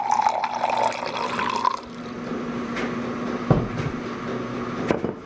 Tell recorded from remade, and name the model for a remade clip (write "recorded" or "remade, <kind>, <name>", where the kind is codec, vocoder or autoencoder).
recorded